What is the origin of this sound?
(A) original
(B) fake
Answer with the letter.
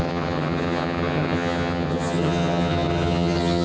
B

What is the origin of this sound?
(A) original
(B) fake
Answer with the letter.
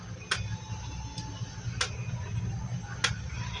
A